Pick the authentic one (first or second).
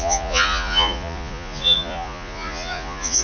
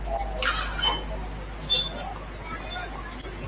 second